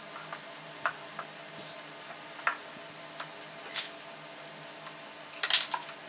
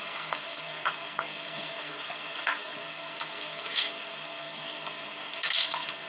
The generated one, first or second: second